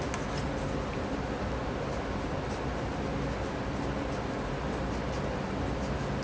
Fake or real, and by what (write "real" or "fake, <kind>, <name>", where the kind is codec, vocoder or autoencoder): real